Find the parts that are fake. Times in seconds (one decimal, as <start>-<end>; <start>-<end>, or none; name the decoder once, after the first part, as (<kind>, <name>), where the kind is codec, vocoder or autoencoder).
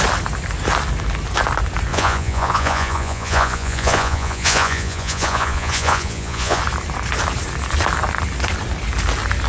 1.9-6.6 (vocoder, Vocos)